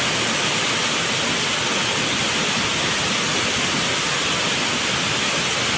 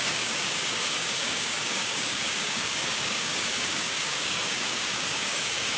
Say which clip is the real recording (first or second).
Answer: first